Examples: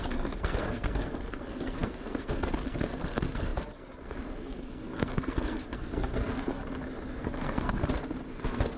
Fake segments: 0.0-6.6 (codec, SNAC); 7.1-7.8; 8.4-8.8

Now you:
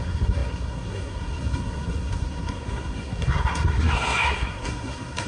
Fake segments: 0.0-5.3 (codec, SNAC)

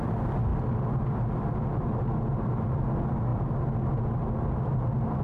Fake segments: none

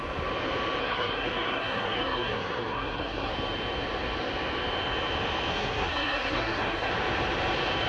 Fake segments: 0.8-3.3 (codec, SNAC); 5.5-6.9

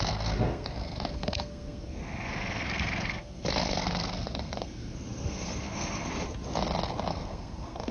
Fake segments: 0.0-6.1 (codec, SNAC); 7.1-7.9

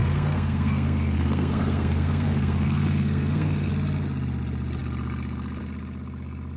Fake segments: 0.0-3.7 (codec, SNAC)

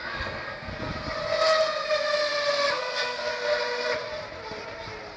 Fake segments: 0.0-0.7 (codec, SNAC); 2.7-3.3

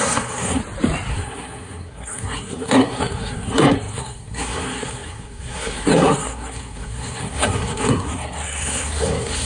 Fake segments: 0.0-0.6 (codec, SNAC); 1.1-9.4